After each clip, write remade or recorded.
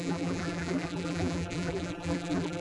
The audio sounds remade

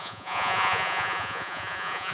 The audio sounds remade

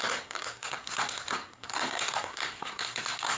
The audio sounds remade